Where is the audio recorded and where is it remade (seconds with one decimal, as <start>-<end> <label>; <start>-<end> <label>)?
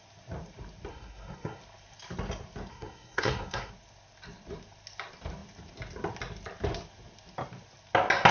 0.0-0.9 recorded; 0.9-1.6 remade; 1.6-2.7 recorded; 2.7-3.7 remade; 3.7-8.3 recorded